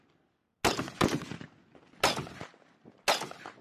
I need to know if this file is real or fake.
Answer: real